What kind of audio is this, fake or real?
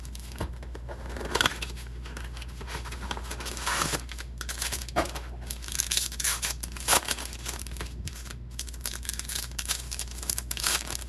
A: fake